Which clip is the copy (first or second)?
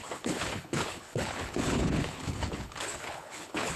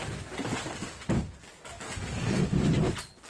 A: first